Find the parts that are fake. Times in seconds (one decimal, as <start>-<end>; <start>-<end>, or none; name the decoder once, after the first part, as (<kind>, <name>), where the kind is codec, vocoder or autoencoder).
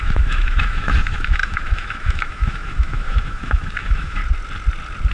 0.0-4.2 (autoencoder, DAC-VAE)